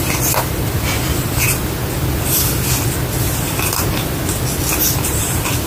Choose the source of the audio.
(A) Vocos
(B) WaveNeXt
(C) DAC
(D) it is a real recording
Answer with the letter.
D